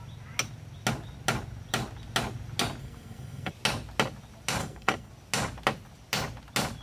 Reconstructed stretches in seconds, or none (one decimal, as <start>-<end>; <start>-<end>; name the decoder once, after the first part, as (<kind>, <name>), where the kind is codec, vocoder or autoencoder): 2.8-3.5 (codec, SNAC); 4.6-5.1